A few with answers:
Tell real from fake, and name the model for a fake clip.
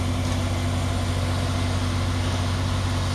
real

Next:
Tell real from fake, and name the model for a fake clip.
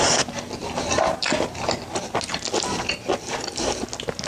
real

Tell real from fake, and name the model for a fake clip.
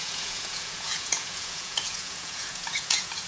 fake, vocoder, Vocos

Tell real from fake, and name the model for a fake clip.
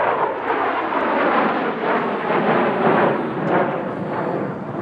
real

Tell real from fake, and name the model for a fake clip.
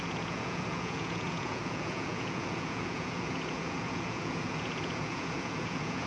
fake, vocoder, Vocos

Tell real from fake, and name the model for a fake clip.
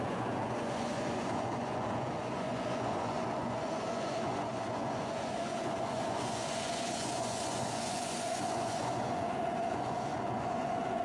fake, vocoder, Vocos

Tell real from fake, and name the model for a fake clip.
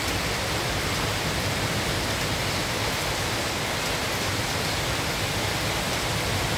real